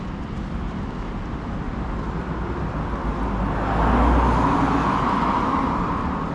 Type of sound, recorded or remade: recorded